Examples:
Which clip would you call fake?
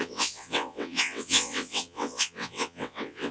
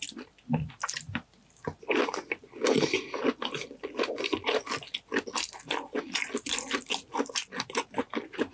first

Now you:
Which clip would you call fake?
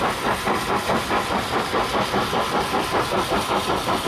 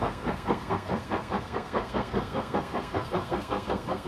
second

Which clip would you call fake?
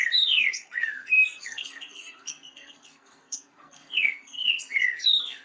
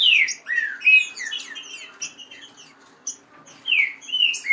first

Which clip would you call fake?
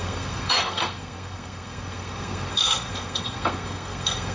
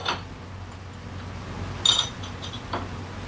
first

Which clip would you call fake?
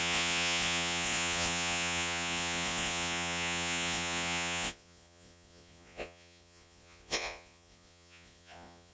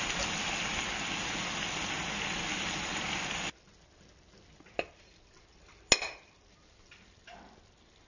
first